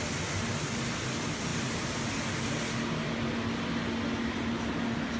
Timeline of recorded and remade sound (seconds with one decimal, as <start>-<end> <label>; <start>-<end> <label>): 0.0-5.2 recorded